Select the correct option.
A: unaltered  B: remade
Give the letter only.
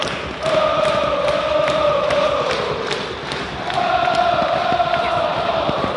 A